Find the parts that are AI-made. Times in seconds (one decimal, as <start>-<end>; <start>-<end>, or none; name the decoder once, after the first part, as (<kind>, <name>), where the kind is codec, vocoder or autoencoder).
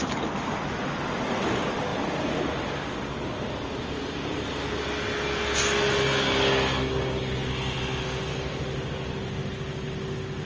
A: none